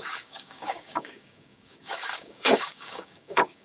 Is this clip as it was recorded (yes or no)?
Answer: no